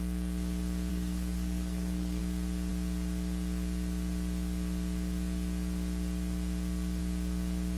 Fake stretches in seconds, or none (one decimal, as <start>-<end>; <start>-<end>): 0.9-2.2